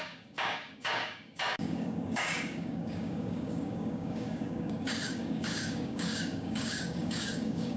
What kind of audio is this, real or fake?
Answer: fake